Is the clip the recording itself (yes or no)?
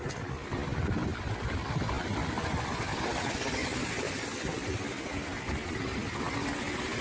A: yes